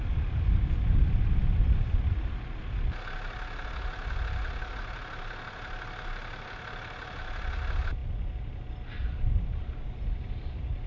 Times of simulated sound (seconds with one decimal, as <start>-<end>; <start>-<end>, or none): none